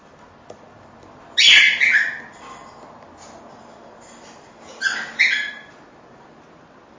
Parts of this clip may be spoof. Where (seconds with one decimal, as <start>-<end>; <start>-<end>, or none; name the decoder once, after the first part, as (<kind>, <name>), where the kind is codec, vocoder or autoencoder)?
none